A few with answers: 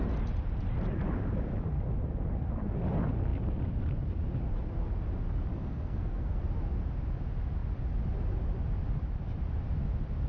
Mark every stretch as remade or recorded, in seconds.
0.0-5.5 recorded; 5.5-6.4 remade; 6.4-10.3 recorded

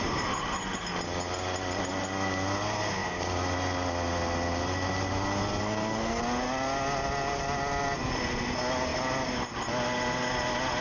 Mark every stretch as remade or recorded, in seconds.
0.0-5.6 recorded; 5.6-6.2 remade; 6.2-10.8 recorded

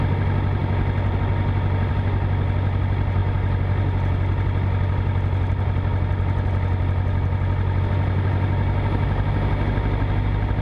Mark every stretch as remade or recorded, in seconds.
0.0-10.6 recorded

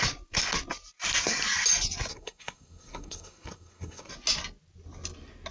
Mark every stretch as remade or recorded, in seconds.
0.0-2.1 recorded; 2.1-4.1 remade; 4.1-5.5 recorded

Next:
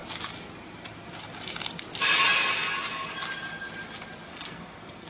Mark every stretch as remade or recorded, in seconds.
0.0-4.3 recorded; 4.3-5.1 remade